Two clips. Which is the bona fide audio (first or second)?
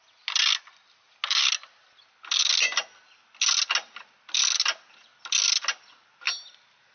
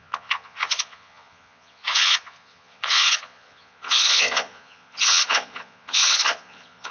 first